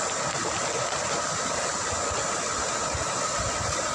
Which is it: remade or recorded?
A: recorded